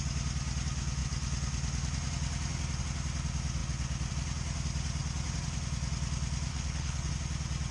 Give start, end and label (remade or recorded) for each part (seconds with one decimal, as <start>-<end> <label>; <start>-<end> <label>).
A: 0.0-6.5 recorded; 6.5-7.1 remade; 7.1-7.7 recorded